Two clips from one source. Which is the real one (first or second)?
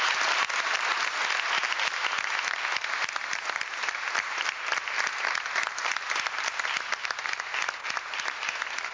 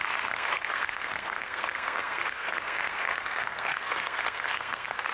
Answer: first